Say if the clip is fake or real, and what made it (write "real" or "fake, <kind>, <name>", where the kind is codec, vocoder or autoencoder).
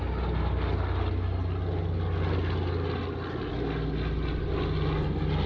real